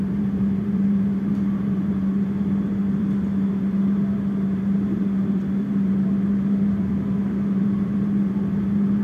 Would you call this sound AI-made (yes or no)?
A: yes